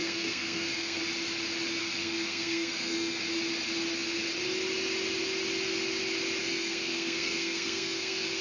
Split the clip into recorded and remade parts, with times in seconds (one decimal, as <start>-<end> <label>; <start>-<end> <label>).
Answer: 0.0-1.0 remade; 1.0-1.8 recorded; 1.8-3.2 remade; 3.2-6.4 recorded; 6.4-8.4 remade